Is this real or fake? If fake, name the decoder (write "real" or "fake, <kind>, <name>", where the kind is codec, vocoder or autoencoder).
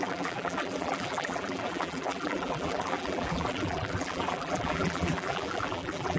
fake, vocoder, BigVGAN v2